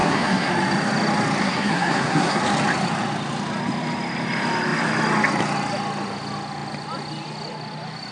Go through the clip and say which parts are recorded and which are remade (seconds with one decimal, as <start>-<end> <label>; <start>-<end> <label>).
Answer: 0.0-0.5 remade; 0.5-1.4 recorded; 1.4-2.4 remade; 2.4-8.1 recorded